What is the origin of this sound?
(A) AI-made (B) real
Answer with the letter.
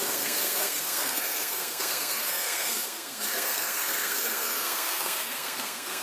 A